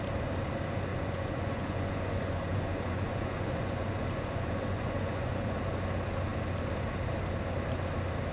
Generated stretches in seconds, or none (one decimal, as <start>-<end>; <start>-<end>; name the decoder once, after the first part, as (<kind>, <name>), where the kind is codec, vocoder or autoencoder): 0.9-5.5 (vocoder, Vocos)